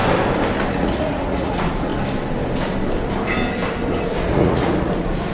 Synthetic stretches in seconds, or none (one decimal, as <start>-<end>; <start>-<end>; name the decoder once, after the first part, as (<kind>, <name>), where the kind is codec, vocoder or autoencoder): 0.7-1.9 (vocoder, Vocos); 4.0-5.3